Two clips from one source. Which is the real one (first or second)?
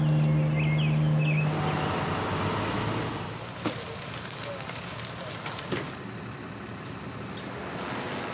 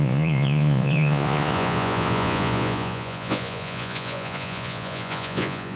first